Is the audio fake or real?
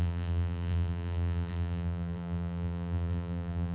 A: fake